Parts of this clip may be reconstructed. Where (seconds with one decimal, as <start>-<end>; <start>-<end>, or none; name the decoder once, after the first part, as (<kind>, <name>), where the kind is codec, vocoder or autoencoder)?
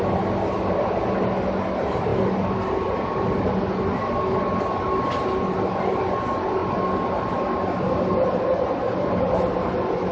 none